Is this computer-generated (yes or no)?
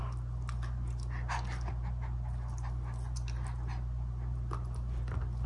no